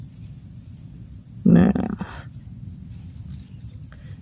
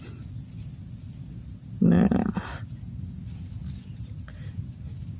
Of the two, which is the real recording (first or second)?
second